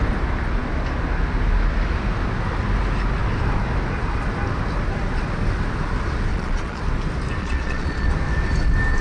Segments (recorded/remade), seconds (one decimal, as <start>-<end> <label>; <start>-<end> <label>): 0.0-6.3 recorded; 6.3-6.8 remade; 6.8-7.4 recorded; 7.4-8.1 remade; 8.1-9.0 recorded